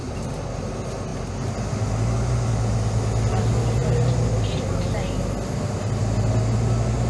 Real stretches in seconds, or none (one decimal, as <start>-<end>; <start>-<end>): 0.0-7.1

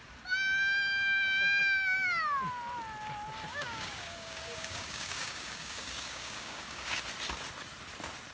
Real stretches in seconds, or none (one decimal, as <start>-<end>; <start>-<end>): 0.0-1.6; 2.2-3.5; 7.0-8.3

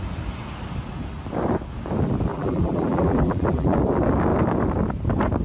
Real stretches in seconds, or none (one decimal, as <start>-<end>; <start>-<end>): 0.0-2.3; 3.8-5.4